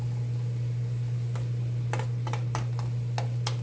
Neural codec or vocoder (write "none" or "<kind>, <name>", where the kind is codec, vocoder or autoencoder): none